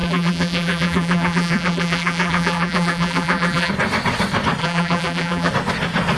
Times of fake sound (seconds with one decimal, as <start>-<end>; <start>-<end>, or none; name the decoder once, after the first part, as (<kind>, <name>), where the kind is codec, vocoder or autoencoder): 0.0-3.7 (vocoder, BigVGAN v2); 4.6-5.5